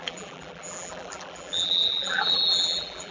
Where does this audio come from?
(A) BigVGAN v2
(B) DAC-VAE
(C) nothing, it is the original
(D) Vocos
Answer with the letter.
A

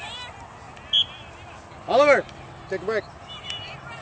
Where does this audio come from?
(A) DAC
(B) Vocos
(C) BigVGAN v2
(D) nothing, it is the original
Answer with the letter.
D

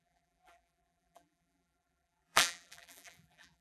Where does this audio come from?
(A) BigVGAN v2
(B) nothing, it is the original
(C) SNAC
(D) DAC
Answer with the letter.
A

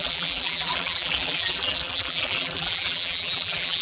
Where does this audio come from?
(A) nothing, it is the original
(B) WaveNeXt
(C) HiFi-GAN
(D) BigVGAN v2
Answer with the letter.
D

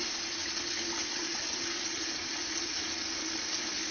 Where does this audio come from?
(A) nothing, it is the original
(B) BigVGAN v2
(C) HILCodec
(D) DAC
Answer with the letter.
A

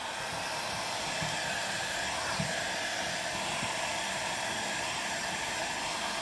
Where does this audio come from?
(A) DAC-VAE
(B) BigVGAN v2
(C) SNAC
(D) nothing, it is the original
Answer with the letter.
B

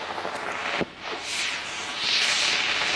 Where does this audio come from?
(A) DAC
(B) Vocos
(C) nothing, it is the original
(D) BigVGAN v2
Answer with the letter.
C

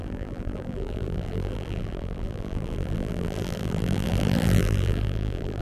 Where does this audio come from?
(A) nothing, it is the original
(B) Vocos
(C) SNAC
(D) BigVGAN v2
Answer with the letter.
D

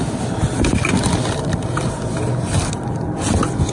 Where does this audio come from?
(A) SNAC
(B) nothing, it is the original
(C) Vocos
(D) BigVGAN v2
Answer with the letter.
B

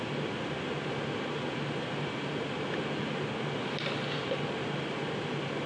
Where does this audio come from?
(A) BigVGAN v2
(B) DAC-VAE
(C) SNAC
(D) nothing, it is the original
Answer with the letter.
D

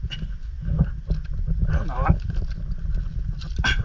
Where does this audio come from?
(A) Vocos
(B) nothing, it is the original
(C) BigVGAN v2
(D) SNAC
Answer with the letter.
B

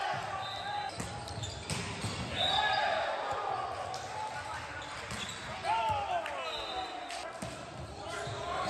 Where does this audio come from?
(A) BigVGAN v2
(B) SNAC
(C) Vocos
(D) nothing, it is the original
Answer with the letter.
D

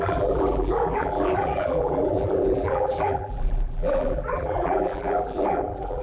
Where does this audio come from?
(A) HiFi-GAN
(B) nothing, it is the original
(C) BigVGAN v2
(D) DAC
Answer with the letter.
C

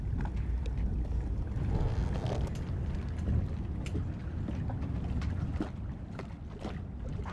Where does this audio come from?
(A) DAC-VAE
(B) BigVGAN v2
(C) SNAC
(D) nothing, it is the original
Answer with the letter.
D